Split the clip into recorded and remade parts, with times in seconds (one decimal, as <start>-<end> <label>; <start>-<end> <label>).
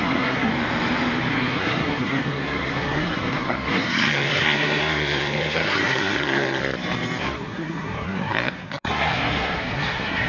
0.0-0.5 remade; 0.5-1.3 recorded; 1.3-6.6 remade; 6.6-7.2 recorded; 7.2-10.3 remade